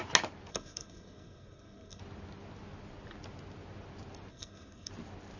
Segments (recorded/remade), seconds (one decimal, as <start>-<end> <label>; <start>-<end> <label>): 0.0-0.5 recorded; 0.5-2.0 remade; 2.0-4.3 recorded; 4.3-4.9 remade; 4.9-5.4 recorded